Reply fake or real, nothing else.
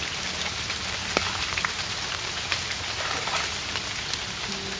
real